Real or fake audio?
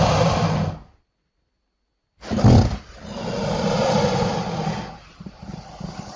real